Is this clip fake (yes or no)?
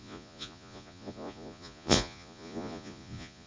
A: yes